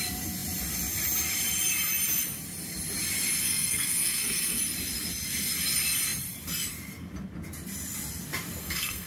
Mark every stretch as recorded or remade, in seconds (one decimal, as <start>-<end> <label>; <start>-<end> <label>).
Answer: 0.0-3.4 recorded; 3.4-4.6 remade; 4.6-8.6 recorded; 8.6-9.1 remade